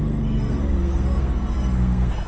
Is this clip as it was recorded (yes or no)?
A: no